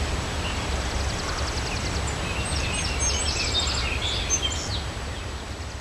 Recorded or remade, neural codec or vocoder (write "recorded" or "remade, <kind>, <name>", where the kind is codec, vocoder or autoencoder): recorded